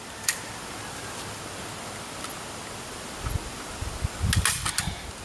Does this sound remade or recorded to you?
recorded